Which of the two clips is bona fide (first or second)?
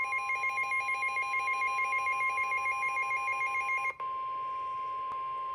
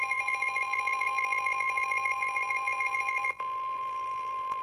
first